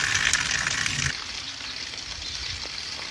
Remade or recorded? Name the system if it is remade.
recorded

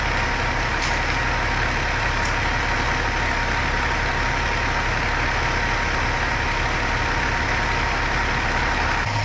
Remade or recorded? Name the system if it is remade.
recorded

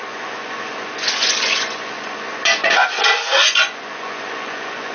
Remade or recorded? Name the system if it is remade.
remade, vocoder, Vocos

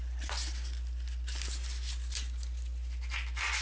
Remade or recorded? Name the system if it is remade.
recorded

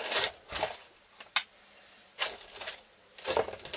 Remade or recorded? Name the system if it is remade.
recorded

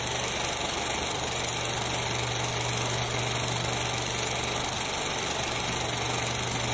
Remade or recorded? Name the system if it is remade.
recorded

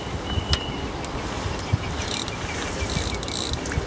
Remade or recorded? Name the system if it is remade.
recorded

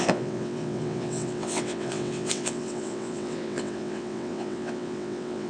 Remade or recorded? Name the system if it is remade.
remade, vocoder, WaveNeXt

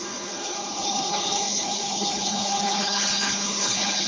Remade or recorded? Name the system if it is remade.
remade, codec, HILCodec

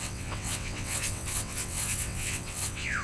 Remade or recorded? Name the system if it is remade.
remade, vocoder, WaveNeXt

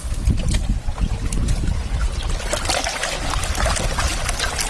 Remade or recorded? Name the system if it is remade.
recorded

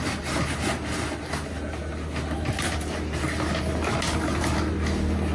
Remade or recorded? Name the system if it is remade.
recorded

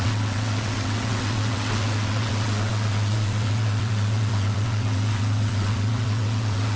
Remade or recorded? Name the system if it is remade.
remade, vocoder, WaveNeXt